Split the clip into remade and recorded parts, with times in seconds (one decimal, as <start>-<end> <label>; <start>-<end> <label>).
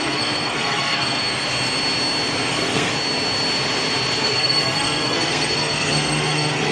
0.0-1.2 remade; 1.2-2.5 recorded; 2.5-2.9 remade; 2.9-4.2 recorded; 4.2-6.7 remade